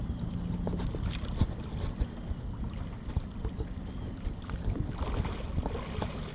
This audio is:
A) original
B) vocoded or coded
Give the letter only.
A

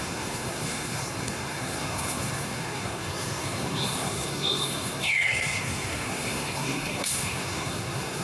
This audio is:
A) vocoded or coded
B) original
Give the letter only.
A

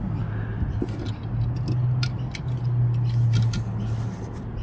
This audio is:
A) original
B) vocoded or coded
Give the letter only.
A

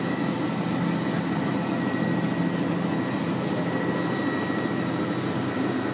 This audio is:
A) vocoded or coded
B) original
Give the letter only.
B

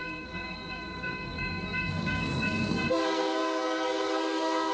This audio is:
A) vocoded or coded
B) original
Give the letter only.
A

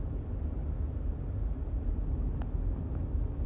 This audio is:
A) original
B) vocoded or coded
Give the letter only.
A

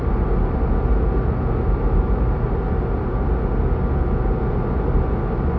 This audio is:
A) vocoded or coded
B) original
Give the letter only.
B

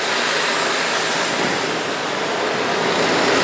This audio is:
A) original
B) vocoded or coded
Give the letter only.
A